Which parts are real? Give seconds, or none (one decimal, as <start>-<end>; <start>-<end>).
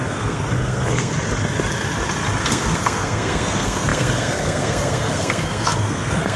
1.1-2.4